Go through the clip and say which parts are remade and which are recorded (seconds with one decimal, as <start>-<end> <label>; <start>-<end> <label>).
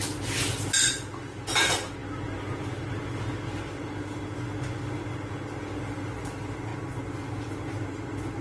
0.0-8.4 recorded